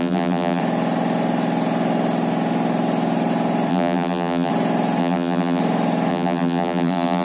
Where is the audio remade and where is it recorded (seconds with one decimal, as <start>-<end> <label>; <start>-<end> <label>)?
0.0-0.6 remade; 0.6-3.7 recorded; 3.7-4.5 remade; 4.5-5.0 recorded; 5.0-5.6 remade; 5.6-6.1 recorded; 6.1-7.2 remade